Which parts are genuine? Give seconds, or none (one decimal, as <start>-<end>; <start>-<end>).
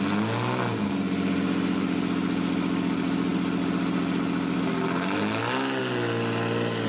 0.0-6.9